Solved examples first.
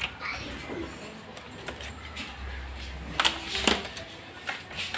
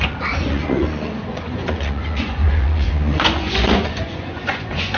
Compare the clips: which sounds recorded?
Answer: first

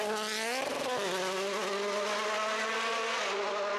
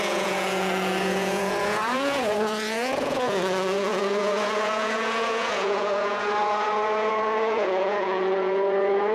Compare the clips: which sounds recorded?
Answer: first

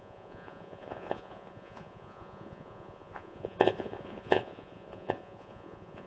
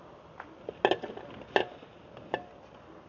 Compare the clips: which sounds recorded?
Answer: second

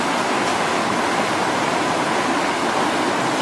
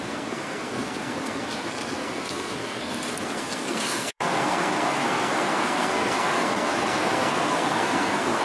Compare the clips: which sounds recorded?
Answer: first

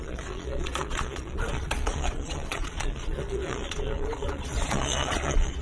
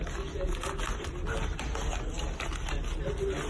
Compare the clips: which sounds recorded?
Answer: second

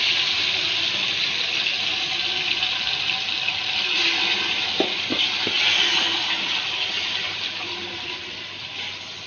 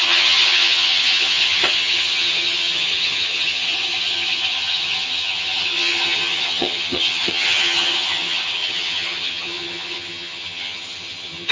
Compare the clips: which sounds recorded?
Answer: first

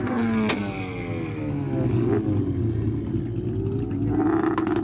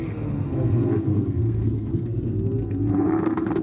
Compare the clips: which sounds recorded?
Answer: first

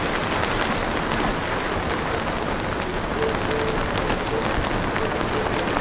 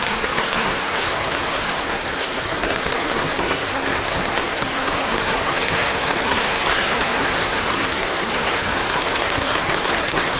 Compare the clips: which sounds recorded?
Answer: first